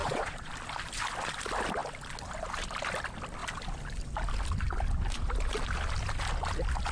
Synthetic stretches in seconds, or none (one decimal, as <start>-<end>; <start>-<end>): 0.0-0.5